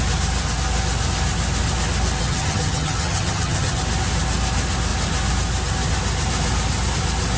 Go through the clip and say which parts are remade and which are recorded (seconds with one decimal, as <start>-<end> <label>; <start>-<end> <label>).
0.0-2.2 recorded; 2.2-3.8 remade; 3.8-7.4 recorded